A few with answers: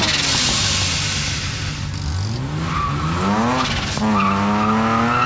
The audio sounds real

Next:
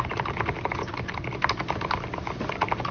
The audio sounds real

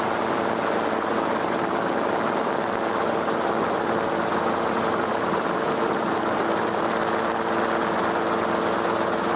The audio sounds real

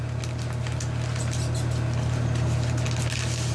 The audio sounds real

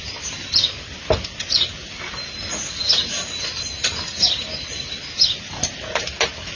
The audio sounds real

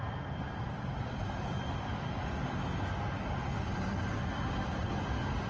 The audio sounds real